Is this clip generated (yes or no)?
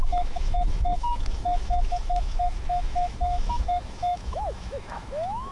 yes